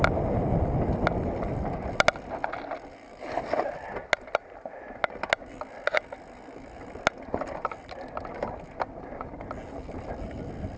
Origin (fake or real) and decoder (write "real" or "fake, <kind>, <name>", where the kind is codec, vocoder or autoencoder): real